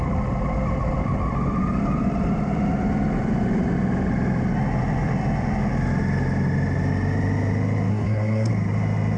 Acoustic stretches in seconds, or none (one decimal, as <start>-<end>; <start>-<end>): 0.0-7.9; 8.5-9.2